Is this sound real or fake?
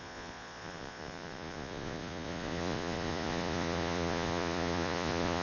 fake